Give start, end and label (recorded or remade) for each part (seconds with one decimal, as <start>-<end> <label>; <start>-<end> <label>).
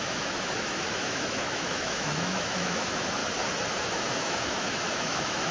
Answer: 0.0-3.2 remade; 3.2-3.8 recorded; 3.8-5.5 remade